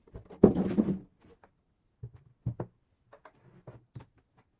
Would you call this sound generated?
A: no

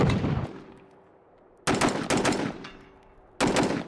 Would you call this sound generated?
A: no